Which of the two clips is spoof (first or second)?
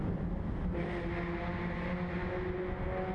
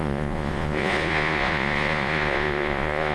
second